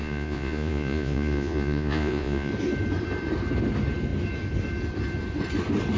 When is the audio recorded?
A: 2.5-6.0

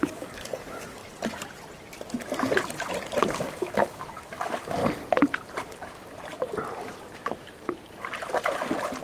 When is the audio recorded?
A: 1.0-3.2; 4.8-9.0

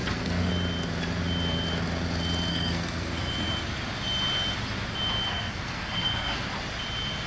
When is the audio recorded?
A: 0.5-2.5; 3.3-5.3; 6.4-7.3

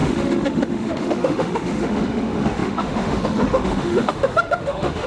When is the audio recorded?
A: none

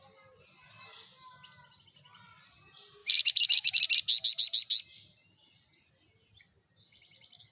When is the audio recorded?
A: 0.0-3.0; 3.8-7.5

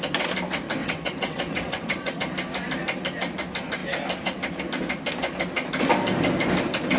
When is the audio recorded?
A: 0.0-0.8; 2.2-7.0

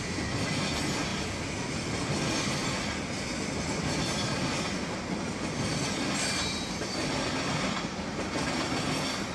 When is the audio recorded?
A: 0.0-9.3